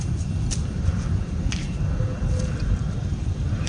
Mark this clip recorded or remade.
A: remade